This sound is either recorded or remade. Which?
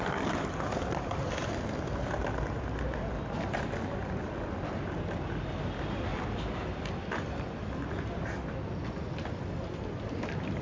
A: recorded